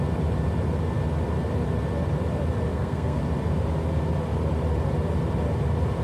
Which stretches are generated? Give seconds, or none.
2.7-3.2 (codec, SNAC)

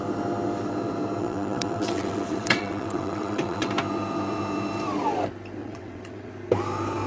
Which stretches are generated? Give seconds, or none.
1.2-3.7 (vocoder, WaveNeXt); 5.6-6.3

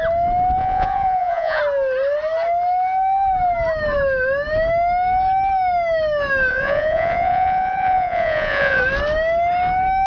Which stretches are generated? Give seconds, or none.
0.6-1.6 (vocoder, Vocos); 6.5-8.8